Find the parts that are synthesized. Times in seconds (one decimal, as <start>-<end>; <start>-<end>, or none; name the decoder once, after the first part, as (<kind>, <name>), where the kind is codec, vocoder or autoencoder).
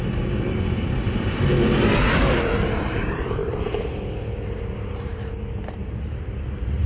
0.0-6.9 (vocoder, BigVGAN v2)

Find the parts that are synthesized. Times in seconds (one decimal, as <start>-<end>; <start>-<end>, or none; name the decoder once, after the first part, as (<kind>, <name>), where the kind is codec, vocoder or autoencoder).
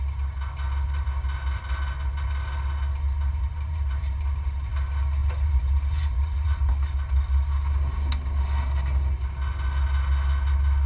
3.3-4.7 (vocoder, BigVGAN v2); 5.2-6.7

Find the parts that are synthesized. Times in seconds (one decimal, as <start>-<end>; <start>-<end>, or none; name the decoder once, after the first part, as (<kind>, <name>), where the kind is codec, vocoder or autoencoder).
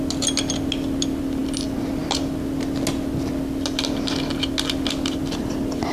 none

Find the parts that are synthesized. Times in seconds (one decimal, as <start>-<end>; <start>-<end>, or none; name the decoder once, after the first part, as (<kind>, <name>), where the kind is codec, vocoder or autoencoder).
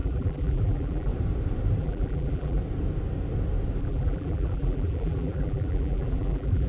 0.0-1.1 (vocoder, BigVGAN v2); 1.8-2.6; 3.8-6.7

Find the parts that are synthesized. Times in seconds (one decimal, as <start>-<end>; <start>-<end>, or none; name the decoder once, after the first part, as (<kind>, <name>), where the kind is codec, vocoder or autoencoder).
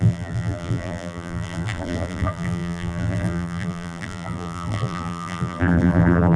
0.0-6.4 (vocoder, BigVGAN v2)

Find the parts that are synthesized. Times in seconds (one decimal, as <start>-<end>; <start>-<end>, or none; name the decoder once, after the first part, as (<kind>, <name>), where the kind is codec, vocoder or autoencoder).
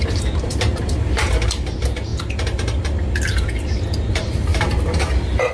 0.0-2.1 (vocoder, BigVGAN v2); 4.1-4.5